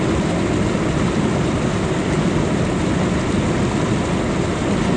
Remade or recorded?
recorded